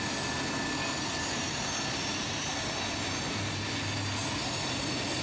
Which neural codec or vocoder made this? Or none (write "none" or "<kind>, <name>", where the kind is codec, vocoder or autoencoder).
none